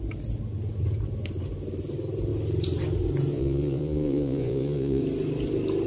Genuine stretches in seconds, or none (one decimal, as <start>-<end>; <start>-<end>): 0.0-3.3; 5.0-5.9